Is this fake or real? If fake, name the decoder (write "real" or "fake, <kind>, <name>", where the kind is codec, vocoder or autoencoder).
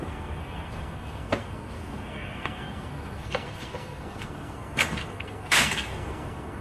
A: fake, codec, SNAC